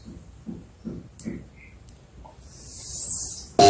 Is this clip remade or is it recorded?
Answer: recorded